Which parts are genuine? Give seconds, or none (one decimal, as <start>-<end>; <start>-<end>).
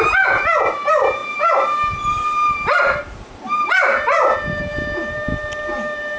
0.0-6.2